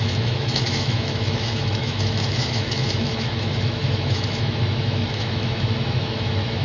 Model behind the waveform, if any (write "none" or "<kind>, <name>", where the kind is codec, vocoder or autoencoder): autoencoder, DAC-VAE